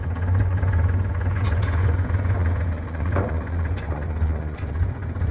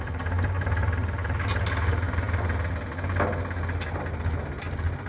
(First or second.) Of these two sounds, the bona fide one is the second